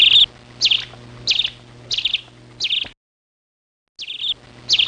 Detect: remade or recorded recorded